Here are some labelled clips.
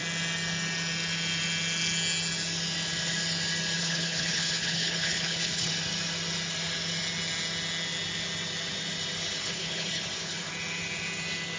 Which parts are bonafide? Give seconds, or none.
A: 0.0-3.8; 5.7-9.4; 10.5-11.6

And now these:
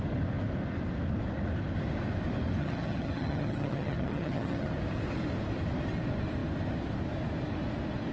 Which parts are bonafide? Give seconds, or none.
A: 0.0-2.6; 4.7-8.1

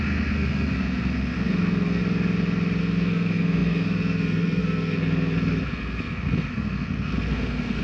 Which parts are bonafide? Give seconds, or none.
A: 2.0-2.8

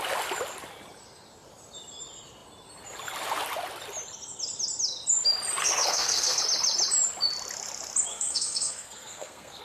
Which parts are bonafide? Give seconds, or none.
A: 0.0-5.6; 6.4-8.1

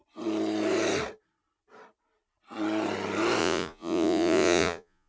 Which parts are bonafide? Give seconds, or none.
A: 0.0-3.4

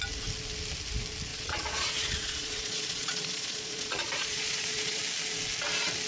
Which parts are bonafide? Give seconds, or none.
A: 0.0-1.3; 5.0-6.1

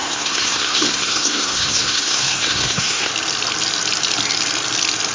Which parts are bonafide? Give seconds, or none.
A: 3.1-5.1